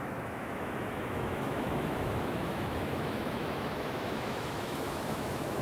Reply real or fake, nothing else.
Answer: fake